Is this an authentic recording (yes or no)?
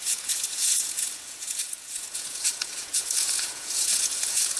no